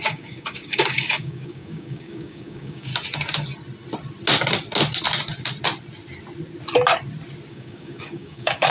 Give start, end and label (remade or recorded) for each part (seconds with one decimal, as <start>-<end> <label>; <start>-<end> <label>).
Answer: 0.0-2.9 remade; 2.9-7.5 recorded; 7.5-8.7 remade